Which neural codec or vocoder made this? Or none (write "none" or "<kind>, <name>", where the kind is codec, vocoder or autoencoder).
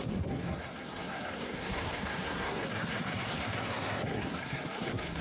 codec, SNAC